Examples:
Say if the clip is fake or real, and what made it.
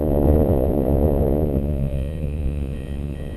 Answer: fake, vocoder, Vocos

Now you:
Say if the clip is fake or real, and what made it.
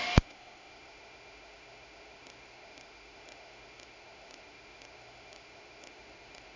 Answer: fake, autoencoder, DAC-VAE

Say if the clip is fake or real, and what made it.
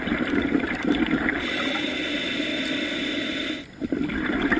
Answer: real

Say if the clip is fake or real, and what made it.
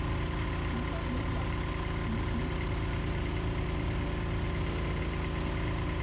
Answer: real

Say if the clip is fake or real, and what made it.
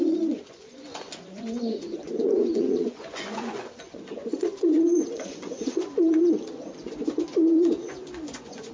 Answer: fake, vocoder, Vocos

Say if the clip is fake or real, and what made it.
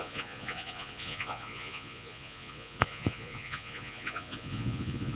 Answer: fake, vocoder, Vocos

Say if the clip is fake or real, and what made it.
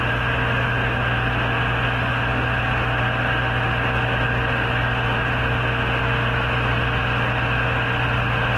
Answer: real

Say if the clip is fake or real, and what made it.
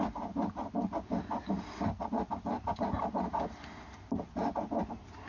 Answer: real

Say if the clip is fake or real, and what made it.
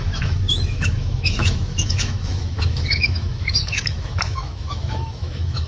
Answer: fake, autoencoder, DAC-VAE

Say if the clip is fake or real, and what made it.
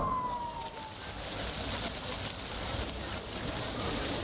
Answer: real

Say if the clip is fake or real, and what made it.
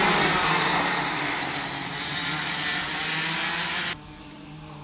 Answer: real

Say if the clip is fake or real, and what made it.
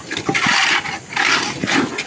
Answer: real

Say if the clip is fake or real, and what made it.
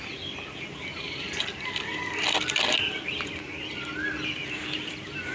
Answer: real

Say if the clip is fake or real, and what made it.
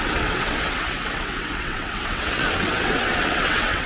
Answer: fake, vocoder, WaveNeXt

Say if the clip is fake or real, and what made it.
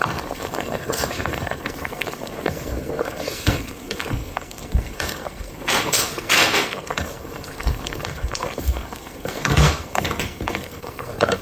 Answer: fake, codec, SNAC